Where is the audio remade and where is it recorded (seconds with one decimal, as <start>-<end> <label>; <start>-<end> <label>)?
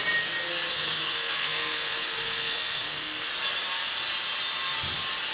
0.0-0.7 recorded; 0.7-3.3 remade; 3.3-5.3 recorded